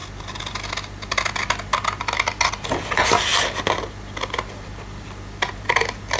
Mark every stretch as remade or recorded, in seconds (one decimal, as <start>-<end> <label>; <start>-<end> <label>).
0.0-6.2 recorded